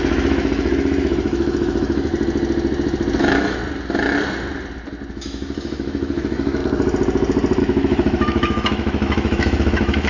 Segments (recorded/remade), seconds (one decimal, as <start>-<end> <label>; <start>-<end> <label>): 0.0-2.1 remade; 2.1-3.2 recorded; 3.2-3.6 remade; 3.6-5.1 recorded; 5.1-6.6 remade; 6.6-7.6 recorded; 7.6-10.1 remade